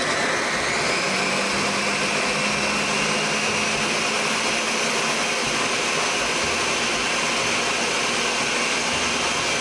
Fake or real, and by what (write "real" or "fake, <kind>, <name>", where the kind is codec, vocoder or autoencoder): real